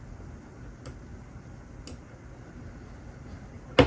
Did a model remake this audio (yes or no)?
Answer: no